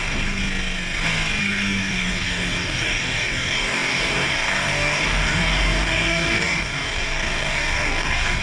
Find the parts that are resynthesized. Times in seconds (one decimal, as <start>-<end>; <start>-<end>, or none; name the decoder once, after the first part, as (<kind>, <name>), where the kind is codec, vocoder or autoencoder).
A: 0.0-0.4 (codec, DAC); 1.4-8.4